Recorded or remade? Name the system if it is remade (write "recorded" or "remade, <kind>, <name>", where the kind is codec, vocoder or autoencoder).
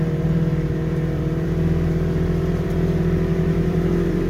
remade, vocoder, BigVGAN v2